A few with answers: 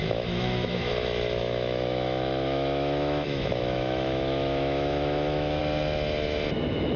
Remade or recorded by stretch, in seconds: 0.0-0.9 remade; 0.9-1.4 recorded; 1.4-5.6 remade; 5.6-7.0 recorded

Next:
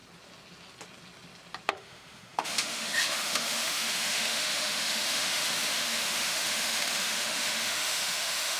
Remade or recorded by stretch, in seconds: 0.0-1.7 recorded; 1.7-8.6 remade

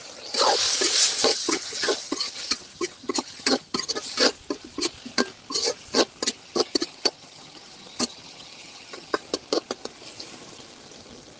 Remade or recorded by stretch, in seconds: 0.0-1.3 recorded; 1.3-3.9 remade; 3.9-6.4 recorded; 6.4-9.2 remade; 9.2-11.4 recorded

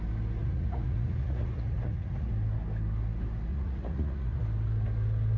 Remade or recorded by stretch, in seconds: 0.0-0.4 recorded; 0.4-2.3 remade; 2.3-3.5 recorded; 3.5-4.4 remade; 4.4-5.4 recorded